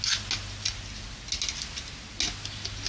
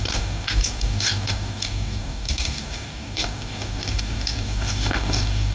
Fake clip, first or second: second